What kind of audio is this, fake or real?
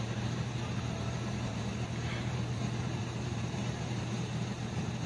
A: fake